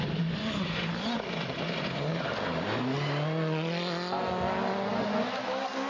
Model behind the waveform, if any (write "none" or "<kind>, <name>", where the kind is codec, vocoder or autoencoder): none